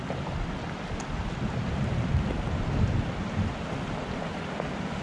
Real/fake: real